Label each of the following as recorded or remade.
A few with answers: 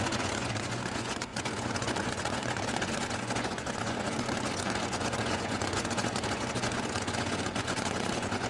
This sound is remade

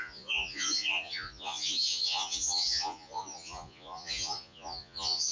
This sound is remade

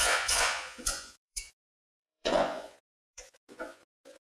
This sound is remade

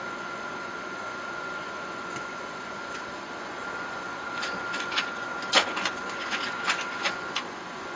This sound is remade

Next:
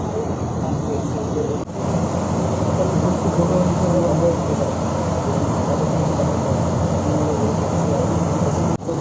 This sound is recorded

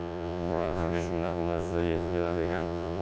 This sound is remade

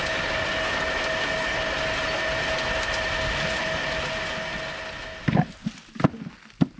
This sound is recorded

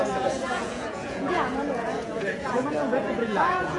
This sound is remade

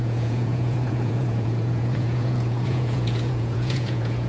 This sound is remade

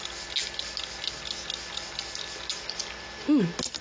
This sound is recorded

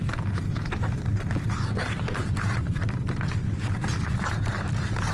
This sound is recorded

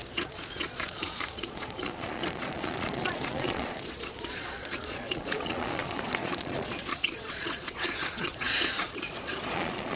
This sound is remade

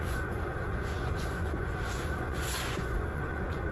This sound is remade